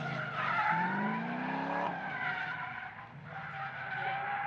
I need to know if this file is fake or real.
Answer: real